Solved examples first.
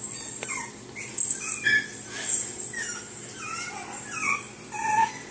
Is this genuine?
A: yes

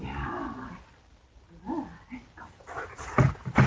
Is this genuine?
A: yes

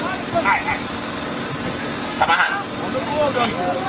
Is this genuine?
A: yes